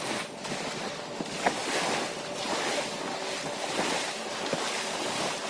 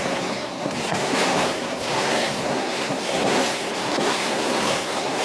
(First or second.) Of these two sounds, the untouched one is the first